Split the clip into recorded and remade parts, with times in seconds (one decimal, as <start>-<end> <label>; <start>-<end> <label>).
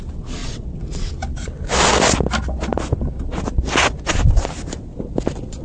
0.0-0.4 recorded; 0.4-1.1 remade; 1.1-5.6 recorded